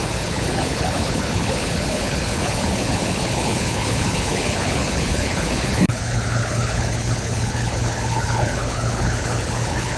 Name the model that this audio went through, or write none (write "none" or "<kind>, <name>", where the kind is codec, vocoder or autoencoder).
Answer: codec, HILCodec